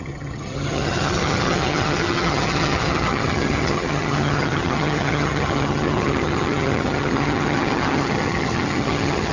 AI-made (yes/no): yes